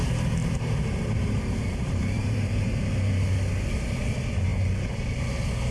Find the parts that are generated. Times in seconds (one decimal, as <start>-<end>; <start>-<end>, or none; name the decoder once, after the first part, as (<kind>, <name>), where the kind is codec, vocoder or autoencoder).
0.4-2.8 (vocoder, BigVGAN v2)